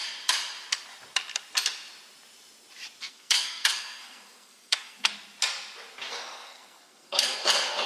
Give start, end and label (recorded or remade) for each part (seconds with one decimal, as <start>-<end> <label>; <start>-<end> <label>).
0.0-3.0 recorded; 3.0-5.1 remade; 5.1-6.1 recorded; 6.1-7.9 remade

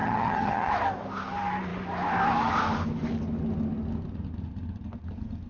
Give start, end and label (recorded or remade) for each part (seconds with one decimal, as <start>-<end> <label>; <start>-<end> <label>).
0.0-0.7 remade; 0.7-5.5 recorded

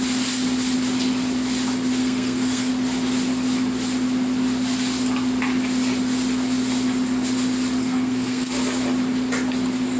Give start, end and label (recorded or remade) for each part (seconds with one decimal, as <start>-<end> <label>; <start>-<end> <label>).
0.0-2.0 recorded; 2.0-2.7 remade; 2.7-7.8 recorded; 7.8-8.5 remade; 8.5-10.0 recorded